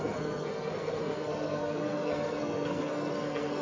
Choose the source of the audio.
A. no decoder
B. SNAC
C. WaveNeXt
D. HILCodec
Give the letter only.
B